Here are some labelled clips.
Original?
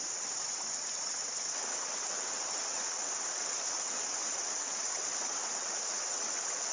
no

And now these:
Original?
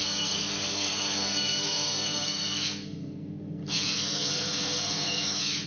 no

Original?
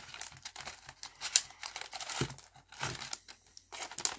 yes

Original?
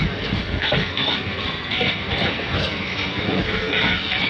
no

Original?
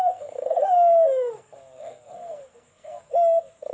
no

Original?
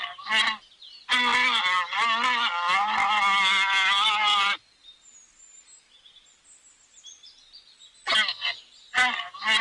yes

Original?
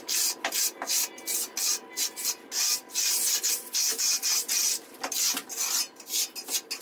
yes